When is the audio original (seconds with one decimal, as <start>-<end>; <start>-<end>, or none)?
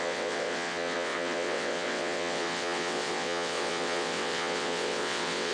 none